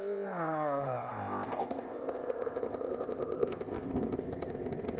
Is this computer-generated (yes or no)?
yes